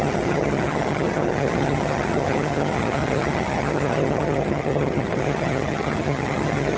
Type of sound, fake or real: fake